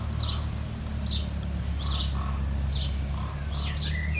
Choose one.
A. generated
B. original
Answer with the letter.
B